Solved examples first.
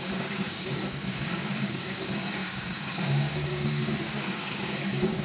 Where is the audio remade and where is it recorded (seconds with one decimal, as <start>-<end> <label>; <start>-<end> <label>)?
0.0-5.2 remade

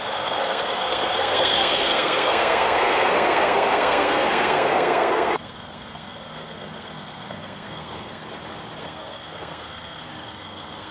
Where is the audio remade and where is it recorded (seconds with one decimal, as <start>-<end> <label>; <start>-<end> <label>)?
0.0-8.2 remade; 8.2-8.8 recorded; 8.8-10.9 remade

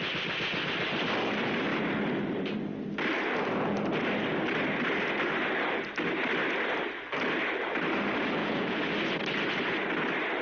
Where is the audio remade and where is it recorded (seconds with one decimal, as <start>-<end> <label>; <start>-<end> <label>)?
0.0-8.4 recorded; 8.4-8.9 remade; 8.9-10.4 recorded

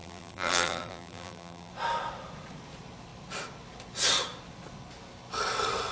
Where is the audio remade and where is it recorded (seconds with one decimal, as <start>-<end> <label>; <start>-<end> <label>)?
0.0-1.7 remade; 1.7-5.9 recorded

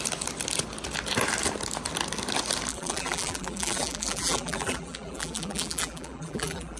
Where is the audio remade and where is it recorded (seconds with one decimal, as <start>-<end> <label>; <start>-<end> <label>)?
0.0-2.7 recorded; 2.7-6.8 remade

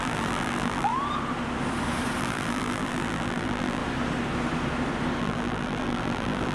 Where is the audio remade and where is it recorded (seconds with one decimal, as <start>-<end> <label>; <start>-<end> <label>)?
0.0-0.9 remade; 0.9-2.2 recorded; 2.2-3.8 remade; 3.8-5.2 recorded; 5.2-6.5 remade